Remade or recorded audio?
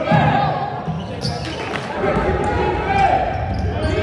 recorded